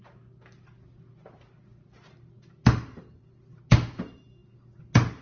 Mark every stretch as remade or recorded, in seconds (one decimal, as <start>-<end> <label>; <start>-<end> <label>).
0.0-5.2 recorded